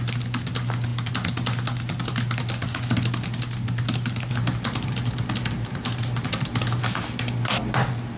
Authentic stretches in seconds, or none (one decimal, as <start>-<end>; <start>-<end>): 0.0-8.2